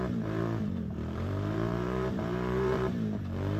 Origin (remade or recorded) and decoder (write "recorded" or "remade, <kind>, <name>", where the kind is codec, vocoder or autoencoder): remade, vocoder, BigVGAN v2